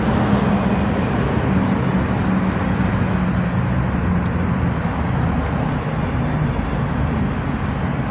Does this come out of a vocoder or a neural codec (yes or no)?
no